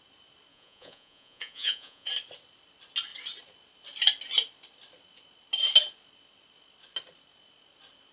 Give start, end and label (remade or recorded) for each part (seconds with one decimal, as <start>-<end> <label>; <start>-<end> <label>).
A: 0.0-0.5 recorded; 0.5-2.1 remade; 2.1-8.1 recorded